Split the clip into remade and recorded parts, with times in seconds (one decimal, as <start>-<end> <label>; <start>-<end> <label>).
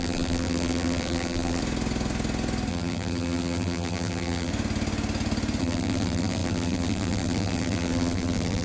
0.0-1.6 remade; 1.6-2.7 recorded; 2.7-4.5 remade; 4.5-5.6 recorded; 5.6-8.6 remade